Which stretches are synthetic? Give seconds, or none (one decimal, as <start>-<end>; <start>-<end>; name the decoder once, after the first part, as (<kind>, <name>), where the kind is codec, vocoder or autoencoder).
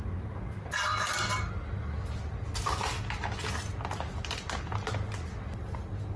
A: none